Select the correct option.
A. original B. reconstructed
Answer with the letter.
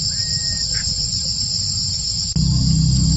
A